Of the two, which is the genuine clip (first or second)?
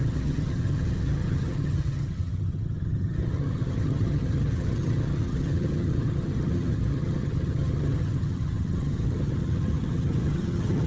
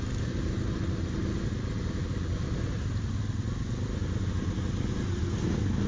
second